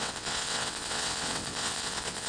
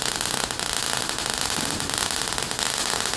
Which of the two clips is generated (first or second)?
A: first